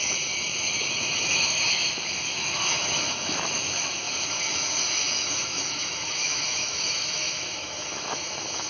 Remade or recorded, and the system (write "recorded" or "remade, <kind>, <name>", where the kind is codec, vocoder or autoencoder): remade, autoencoder, DAC-VAE